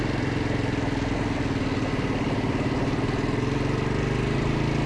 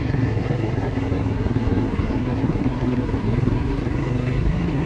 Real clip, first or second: first